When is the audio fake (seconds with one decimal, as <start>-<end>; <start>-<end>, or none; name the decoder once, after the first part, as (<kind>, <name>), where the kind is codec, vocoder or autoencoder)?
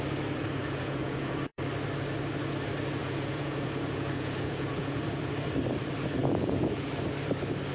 0.6-1.6 (vocoder, Vocos); 3.0-5.3; 6.2-6.9